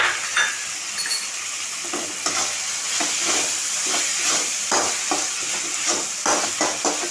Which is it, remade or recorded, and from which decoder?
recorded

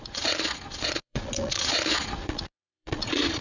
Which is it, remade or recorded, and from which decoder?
remade, vocoder, Vocos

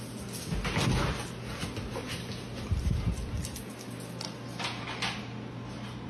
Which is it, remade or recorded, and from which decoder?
recorded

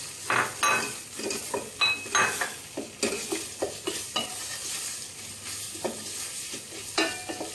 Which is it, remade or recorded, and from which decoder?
recorded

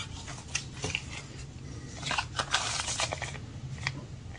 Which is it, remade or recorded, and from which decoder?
recorded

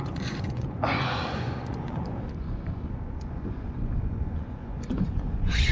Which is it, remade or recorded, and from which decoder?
remade, vocoder, Vocos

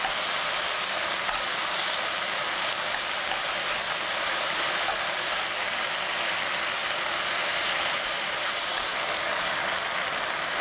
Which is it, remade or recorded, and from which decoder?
recorded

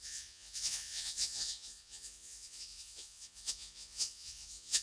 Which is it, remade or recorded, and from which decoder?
remade, vocoder, Vocos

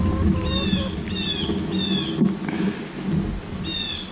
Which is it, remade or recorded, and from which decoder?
recorded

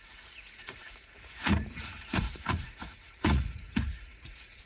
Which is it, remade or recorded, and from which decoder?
remade, vocoder, Vocos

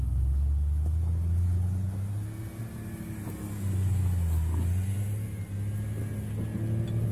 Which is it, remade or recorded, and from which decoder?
recorded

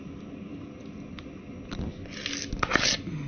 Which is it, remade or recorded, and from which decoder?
recorded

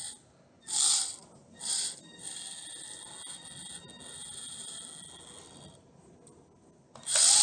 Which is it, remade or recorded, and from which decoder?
recorded